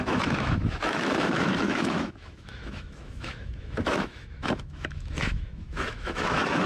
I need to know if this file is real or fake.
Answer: fake